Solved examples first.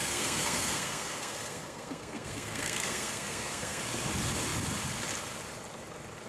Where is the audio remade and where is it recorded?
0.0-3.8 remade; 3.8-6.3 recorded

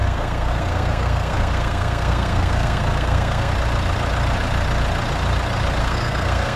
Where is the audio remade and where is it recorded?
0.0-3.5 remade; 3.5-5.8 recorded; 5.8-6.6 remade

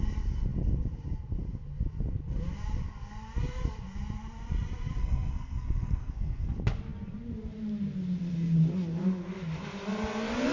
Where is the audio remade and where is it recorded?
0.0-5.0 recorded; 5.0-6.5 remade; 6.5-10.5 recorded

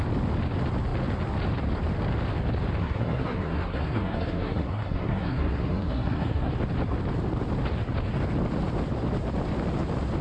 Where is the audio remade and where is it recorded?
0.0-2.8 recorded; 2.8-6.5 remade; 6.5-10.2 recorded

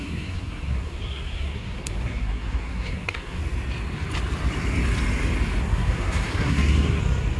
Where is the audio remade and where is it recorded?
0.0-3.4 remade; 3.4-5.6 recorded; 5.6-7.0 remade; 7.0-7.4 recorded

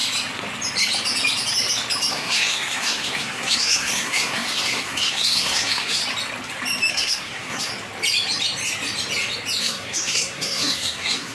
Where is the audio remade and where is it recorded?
0.0-2.1 recorded; 2.1-6.0 remade; 6.0-6.9 recorded; 6.9-7.7 remade; 7.7-9.6 recorded; 9.6-11.3 remade

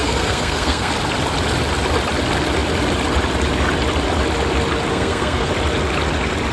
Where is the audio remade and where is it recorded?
0.0-0.9 remade; 0.9-4.9 recorded; 4.9-5.5 remade; 5.5-6.5 recorded